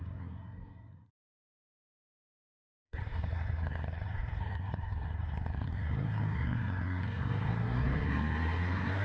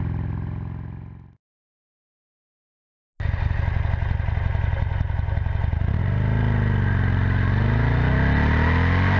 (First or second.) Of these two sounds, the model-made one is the first